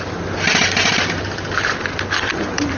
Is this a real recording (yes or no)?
no